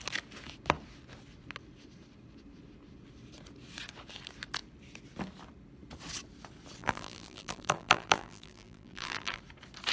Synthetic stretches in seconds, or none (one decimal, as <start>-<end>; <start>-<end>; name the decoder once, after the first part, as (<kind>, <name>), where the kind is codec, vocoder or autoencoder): 6.8-9.4 (vocoder, BigVGAN v2)